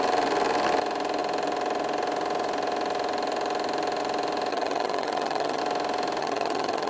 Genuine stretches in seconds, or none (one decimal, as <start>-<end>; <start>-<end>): 0.0-4.5; 5.6-6.2